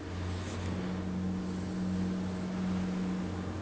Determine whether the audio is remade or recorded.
recorded